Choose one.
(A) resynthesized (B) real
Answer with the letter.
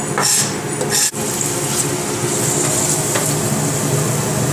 B